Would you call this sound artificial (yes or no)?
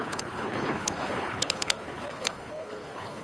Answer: yes